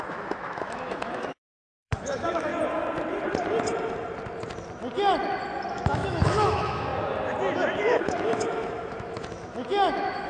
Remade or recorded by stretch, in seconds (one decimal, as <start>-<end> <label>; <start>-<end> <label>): 0.0-2.5 remade; 2.5-5.7 recorded; 5.7-6.9 remade; 6.9-7.8 recorded; 7.8-10.3 remade